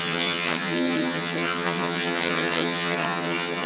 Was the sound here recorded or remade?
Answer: remade